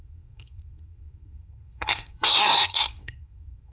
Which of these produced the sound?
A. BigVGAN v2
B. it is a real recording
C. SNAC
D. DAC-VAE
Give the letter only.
C